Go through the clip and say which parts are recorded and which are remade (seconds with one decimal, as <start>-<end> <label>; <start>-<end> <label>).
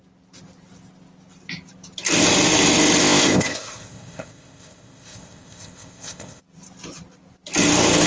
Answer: 0.0-3.0 recorded; 3.0-6.4 remade; 6.4-8.1 recorded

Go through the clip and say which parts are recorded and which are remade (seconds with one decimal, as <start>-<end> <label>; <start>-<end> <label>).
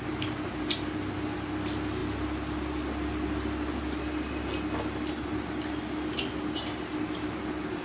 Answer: 0.0-7.8 recorded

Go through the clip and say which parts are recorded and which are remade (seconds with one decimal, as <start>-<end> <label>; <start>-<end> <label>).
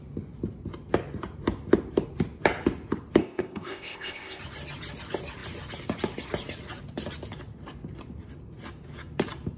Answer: 0.0-3.2 recorded; 3.2-4.4 remade; 4.4-9.6 recorded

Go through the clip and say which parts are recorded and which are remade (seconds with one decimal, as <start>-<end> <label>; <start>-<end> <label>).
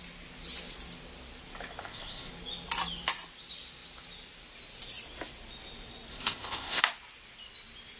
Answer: 0.0-1.8 recorded; 1.8-2.3 remade; 2.3-6.1 recorded; 6.1-6.8 remade; 6.8-8.0 recorded